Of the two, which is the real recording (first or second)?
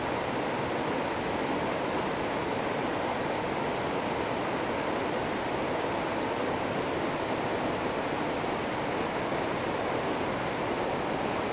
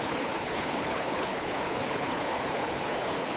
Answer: first